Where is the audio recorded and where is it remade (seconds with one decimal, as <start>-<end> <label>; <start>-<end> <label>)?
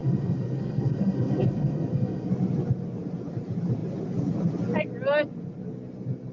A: 0.0-2.3 remade; 2.3-6.3 recorded